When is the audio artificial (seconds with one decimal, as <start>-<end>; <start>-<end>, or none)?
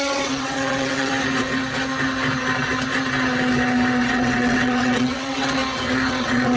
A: 0.0-1.1; 4.0-5.6; 6.1-6.6